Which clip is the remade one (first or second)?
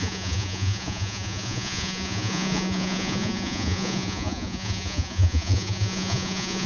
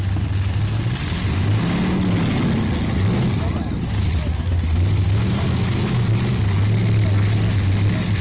first